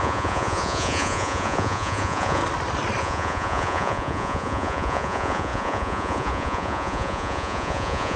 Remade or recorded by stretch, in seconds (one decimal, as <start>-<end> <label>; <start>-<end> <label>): 0.0-2.4 remade; 2.4-3.0 recorded; 3.0-8.2 remade